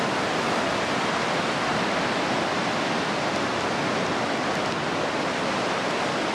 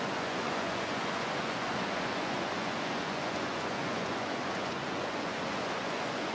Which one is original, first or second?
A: first